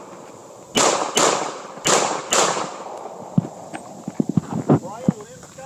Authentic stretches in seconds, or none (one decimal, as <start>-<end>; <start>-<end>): 0.0-5.7